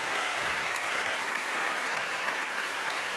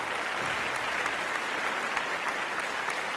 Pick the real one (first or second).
second